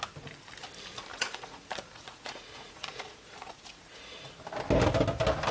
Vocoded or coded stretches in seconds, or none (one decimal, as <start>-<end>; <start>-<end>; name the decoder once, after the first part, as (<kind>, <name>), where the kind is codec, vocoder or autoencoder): 1.1-4.4 (vocoder, Vocos)